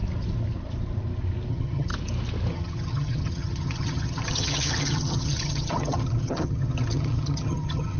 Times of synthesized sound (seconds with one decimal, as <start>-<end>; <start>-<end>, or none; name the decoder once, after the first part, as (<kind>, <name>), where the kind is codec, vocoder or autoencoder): 1.5-1.9 (vocoder, HiFi-GAN); 2.5-8.0